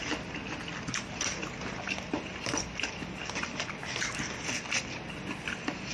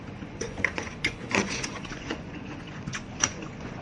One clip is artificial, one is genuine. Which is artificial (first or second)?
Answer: second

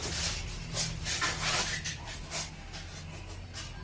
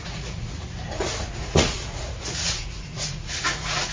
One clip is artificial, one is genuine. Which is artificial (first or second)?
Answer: second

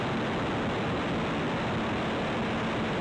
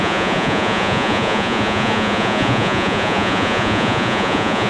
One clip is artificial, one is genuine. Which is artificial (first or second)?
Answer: second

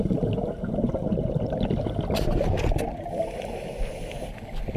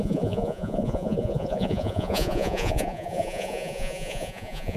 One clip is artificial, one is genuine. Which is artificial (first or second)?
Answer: second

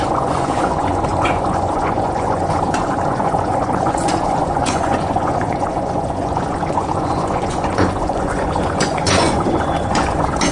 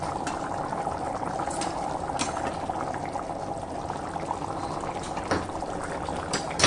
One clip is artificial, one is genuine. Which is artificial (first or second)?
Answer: first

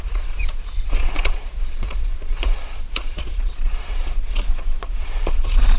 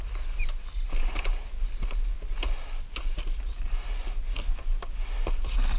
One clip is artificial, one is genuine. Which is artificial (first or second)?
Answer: first